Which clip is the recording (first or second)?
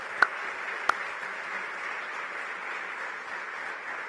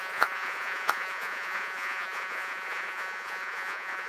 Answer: first